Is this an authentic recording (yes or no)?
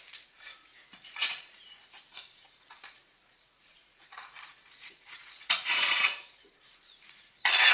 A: no